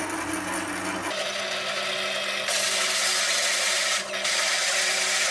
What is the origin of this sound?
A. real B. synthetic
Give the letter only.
A